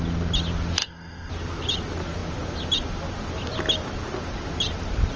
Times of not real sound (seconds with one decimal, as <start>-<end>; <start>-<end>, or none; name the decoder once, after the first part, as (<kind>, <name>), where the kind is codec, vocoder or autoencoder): 0.8-1.3 (codec, SNAC)